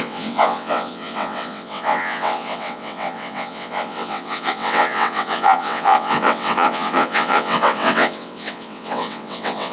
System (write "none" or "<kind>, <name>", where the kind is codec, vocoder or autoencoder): vocoder, WaveNeXt